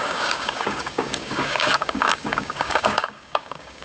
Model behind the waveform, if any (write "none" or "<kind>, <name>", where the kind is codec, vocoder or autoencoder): codec, DAC